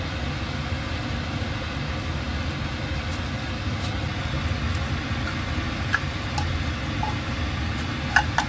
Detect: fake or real real